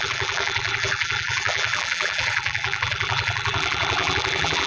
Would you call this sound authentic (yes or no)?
no